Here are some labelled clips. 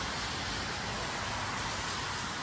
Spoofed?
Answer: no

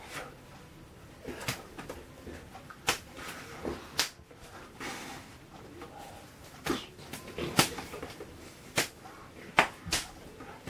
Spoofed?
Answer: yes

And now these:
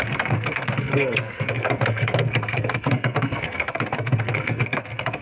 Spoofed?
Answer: yes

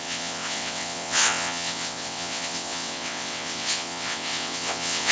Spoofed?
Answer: yes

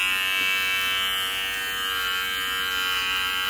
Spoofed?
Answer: no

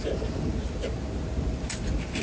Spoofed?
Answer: no